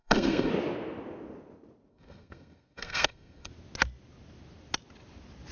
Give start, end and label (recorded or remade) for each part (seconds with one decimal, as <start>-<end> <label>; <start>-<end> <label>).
0.0-0.5 remade; 0.5-1.9 recorded; 1.9-3.5 remade; 3.5-5.5 recorded

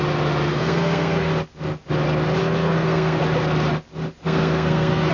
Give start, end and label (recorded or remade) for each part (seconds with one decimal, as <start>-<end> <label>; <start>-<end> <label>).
0.0-0.5 recorded; 0.5-1.3 remade; 1.3-2.4 recorded; 2.4-3.2 remade; 3.2-4.2 recorded; 4.2-5.1 remade

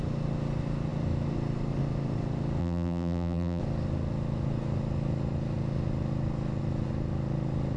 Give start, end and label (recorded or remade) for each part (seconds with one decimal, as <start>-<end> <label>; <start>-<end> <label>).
0.0-2.6 recorded; 2.6-3.6 remade; 3.6-7.8 recorded

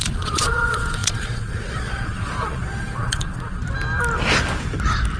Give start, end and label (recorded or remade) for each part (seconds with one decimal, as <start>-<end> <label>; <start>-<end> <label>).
0.0-3.6 remade; 3.6-5.2 recorded

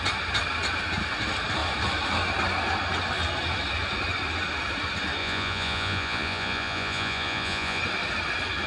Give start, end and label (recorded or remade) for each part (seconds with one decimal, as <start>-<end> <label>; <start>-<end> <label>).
0.0-5.2 recorded; 5.2-7.8 remade; 7.8-8.7 recorded

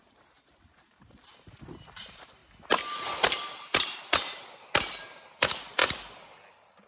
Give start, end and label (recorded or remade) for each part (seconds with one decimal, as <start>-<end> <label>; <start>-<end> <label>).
0.0-2.4 remade; 2.4-3.2 recorded; 3.2-5.8 remade; 5.8-6.5 recorded; 6.5-6.9 remade

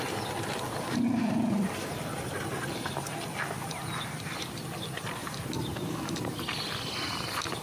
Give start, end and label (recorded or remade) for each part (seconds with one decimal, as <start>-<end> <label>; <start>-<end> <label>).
0.0-0.9 recorded; 0.9-2.9 remade; 2.9-5.2 recorded; 5.2-6.3 remade; 6.3-7.6 recorded

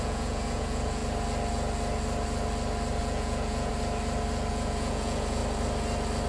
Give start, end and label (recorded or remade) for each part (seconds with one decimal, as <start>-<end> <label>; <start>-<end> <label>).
0.0-1.0 remade; 1.0-3.0 recorded; 3.0-3.7 remade; 3.7-4.5 recorded; 4.5-5.4 remade; 5.4-6.3 recorded